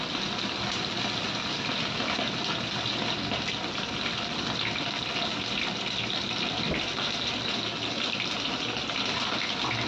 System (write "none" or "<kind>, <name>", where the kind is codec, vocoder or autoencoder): none